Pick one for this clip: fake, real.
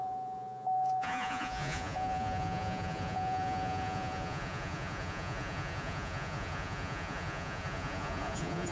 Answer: fake